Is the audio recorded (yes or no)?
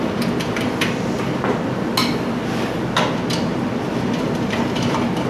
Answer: yes